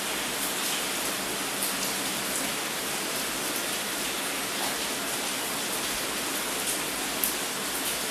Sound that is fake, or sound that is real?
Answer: real